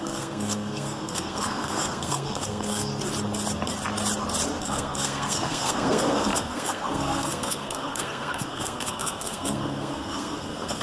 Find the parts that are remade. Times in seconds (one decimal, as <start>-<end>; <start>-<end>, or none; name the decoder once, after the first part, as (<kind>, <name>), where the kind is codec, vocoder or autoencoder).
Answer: 0.0-2.9 (codec, SNAC); 4.6-10.8